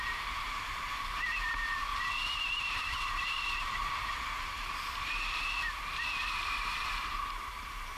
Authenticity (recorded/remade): remade